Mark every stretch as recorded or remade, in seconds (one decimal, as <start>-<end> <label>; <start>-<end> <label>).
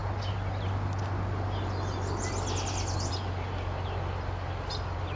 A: 0.0-5.2 recorded